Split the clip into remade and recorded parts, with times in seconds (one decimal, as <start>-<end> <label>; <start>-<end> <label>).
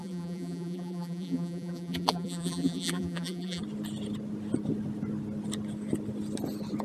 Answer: 0.0-3.6 remade; 3.6-6.8 recorded